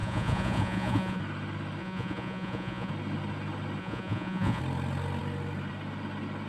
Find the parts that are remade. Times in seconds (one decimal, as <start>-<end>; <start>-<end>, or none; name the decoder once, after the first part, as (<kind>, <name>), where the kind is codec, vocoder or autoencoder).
0.0-1.2 (vocoder, Vocos); 1.8-2.9; 3.8-4.6